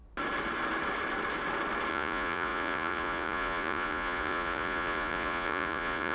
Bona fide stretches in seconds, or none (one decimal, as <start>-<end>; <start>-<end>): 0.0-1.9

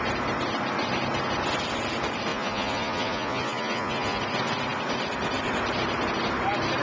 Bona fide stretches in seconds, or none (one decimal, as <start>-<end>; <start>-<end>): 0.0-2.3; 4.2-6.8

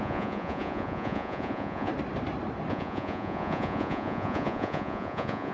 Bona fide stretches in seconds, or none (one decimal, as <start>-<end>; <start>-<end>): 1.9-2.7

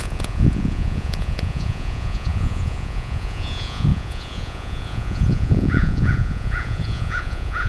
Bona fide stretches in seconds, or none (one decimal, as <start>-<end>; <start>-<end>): none